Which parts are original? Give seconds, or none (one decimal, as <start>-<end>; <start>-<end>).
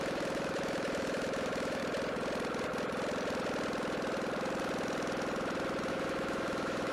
1.8-5.9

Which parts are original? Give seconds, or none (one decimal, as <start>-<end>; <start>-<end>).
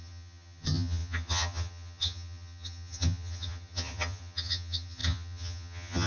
none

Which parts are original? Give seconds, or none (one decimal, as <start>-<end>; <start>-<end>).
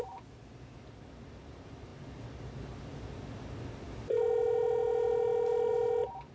0.0-6.3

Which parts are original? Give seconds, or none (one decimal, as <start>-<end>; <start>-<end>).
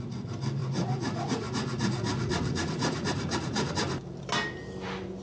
0.0-0.6; 3.7-5.2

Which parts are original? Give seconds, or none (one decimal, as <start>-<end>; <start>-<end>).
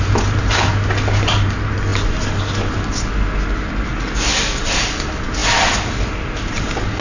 0.0-7.0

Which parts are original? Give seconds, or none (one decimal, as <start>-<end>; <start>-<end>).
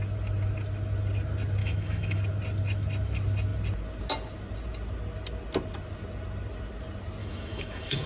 0.0-1.6; 2.2-7.2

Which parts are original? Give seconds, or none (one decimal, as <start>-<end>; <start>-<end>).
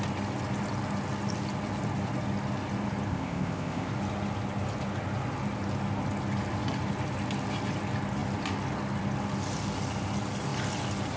0.0-3.1; 3.9-11.2